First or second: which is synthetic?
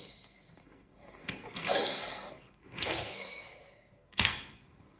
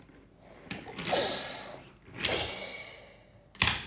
first